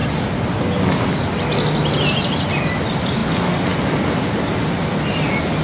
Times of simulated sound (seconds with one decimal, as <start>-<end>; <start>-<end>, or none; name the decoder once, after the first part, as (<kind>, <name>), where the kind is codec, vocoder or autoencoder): none